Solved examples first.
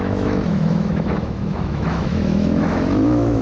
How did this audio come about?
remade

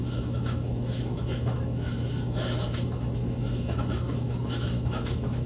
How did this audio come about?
remade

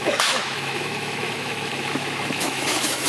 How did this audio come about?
remade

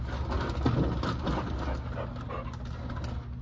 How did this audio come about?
recorded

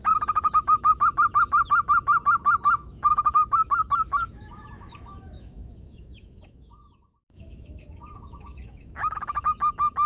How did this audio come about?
remade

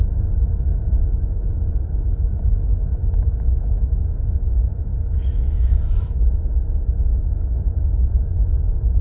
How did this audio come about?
remade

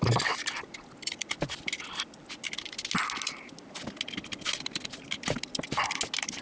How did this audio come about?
recorded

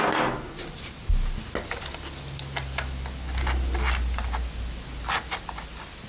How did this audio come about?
recorded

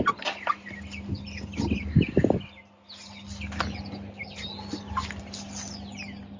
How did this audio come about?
recorded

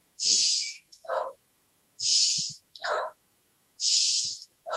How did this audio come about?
remade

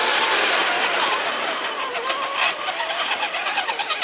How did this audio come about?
recorded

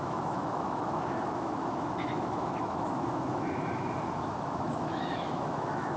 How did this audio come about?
remade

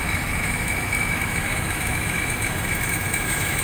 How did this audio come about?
remade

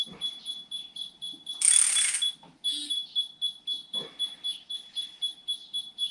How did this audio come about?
recorded